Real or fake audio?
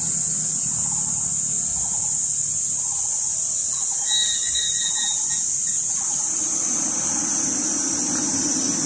real